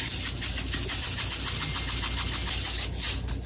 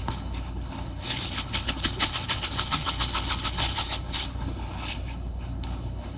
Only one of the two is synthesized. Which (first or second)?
second